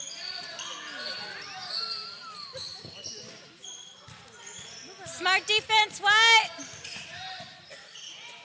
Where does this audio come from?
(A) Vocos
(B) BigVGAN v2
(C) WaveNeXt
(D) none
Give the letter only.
D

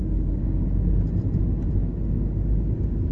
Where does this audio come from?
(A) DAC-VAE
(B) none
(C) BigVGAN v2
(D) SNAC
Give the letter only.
B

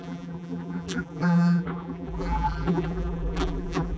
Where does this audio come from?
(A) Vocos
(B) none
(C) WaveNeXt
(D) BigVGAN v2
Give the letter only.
D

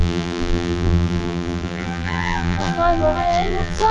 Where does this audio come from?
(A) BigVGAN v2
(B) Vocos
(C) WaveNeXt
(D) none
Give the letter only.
A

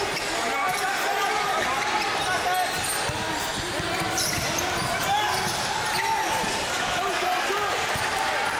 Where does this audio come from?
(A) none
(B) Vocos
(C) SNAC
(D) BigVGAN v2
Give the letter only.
A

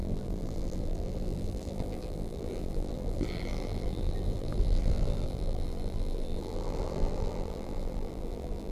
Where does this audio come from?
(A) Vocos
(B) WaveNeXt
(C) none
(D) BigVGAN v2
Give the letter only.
D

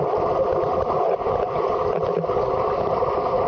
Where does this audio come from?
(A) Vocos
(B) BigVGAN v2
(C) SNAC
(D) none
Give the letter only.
D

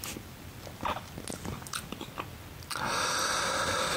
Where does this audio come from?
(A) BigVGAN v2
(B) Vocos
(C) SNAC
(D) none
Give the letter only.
D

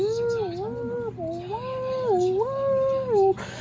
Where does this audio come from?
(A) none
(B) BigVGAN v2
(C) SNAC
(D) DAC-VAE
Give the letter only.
A